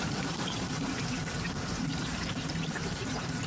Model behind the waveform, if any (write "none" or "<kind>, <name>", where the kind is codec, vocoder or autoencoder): vocoder, BigVGAN v2